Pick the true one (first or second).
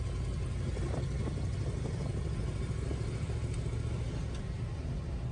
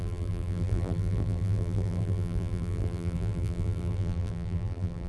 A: first